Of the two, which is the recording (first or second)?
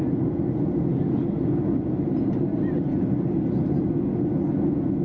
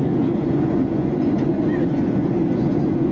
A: first